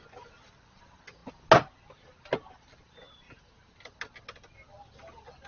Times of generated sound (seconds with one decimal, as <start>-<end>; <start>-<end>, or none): none